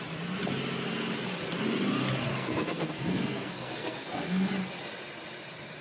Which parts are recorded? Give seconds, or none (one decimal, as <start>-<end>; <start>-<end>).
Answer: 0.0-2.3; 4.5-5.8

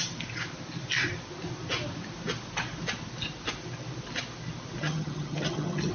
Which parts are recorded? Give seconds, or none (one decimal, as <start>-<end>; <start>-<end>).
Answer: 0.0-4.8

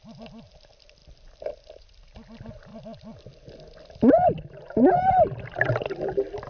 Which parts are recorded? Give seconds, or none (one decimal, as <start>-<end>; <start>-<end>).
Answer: 0.0-6.5

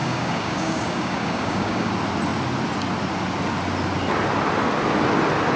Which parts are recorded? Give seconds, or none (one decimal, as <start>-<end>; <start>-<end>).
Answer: 1.9-5.6

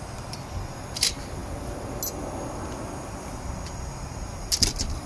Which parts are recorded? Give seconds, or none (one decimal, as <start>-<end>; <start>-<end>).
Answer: 0.0-5.1